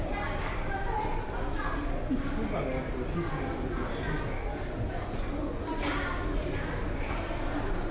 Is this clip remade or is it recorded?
recorded